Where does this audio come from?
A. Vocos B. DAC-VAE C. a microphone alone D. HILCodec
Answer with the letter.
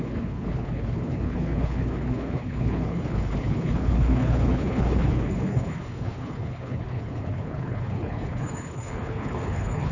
D